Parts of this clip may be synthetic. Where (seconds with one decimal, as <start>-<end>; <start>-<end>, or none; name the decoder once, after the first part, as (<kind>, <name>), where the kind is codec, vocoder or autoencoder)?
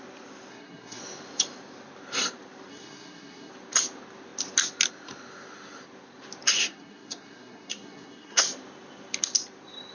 0.5-1.0 (codec, SNAC); 2.7-3.5; 6.6-8.4